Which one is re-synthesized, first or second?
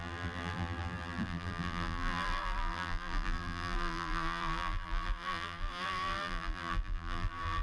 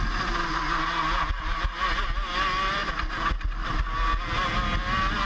first